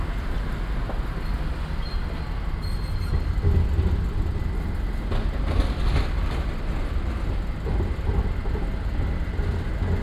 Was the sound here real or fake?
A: real